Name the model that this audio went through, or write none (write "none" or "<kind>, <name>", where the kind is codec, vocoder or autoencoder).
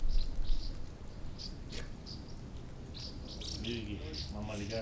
none